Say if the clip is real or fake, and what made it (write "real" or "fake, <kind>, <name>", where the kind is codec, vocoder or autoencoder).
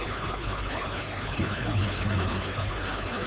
fake, codec, HILCodec